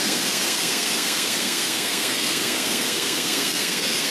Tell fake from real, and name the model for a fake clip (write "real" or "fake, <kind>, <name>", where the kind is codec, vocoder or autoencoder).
fake, codec, SNAC